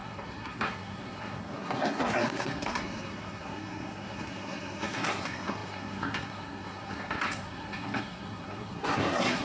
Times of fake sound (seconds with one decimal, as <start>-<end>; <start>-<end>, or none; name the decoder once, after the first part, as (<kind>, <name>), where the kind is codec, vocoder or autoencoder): 0.0-9.4 (codec, SNAC)